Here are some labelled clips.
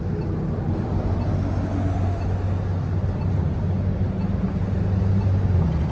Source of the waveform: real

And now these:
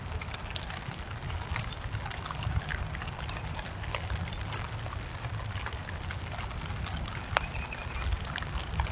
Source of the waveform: fake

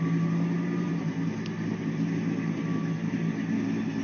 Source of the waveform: real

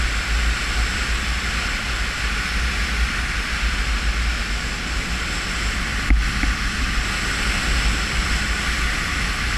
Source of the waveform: real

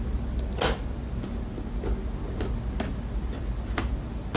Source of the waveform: real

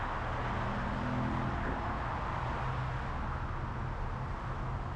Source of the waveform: real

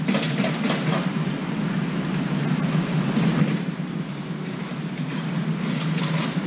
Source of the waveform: real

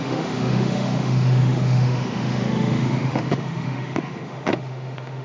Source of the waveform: fake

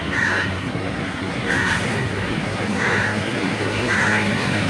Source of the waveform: fake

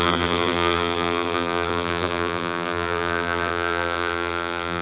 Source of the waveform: fake